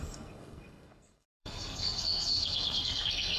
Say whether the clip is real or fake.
fake